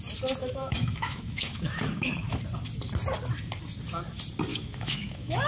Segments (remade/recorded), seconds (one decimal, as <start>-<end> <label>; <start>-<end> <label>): 0.0-0.4 recorded; 0.4-2.4 remade; 2.4-4.5 recorded; 4.5-5.5 remade